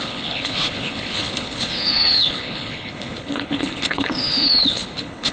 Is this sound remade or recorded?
remade